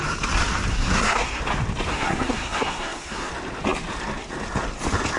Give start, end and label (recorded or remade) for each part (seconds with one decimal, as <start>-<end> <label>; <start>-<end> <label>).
0.0-0.7 recorded; 0.7-1.4 remade; 1.4-1.9 recorded; 1.9-3.3 remade; 3.3-5.2 recorded